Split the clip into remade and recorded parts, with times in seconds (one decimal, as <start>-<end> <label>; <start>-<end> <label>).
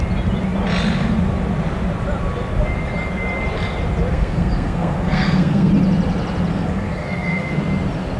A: 0.0-4.1 recorded; 4.1-5.7 remade; 5.7-6.5 recorded; 6.5-7.6 remade; 7.6-8.2 recorded